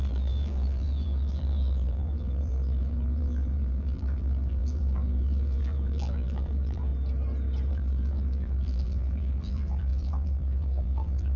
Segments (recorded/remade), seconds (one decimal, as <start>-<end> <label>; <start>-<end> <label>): 0.0-6.9 remade; 6.9-7.7 recorded; 7.7-11.4 remade